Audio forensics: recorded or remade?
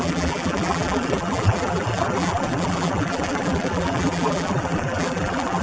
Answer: remade